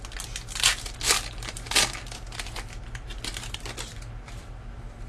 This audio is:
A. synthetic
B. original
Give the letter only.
B